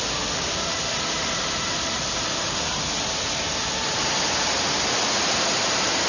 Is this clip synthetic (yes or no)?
no